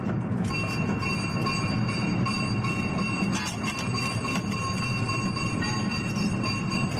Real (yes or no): yes